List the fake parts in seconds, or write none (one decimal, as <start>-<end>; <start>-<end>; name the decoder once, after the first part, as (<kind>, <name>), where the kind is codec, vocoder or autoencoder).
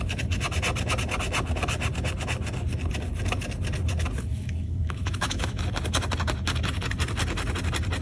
4.3-5.6 (autoencoder, DAC-VAE)